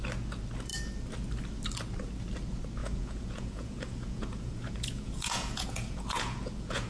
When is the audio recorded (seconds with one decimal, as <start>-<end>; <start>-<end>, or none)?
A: 0.0-2.8